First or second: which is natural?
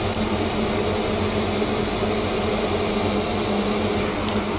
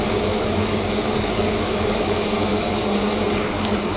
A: first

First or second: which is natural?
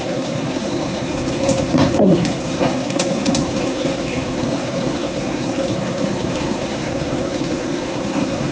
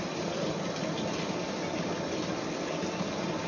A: second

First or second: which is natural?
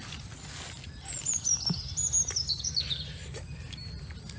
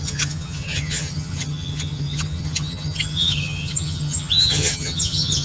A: first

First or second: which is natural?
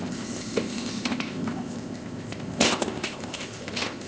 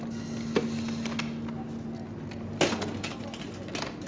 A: second